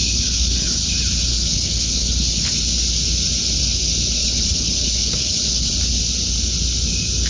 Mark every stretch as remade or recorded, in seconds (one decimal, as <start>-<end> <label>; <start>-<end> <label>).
0.0-0.9 remade; 0.9-1.3 recorded; 1.3-2.6 remade; 2.6-4.2 recorded; 4.2-5.7 remade; 5.7-7.3 recorded